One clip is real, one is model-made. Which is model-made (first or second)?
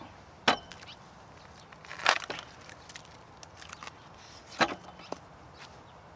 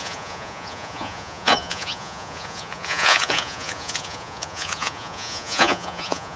second